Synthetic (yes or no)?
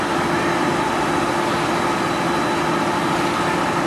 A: no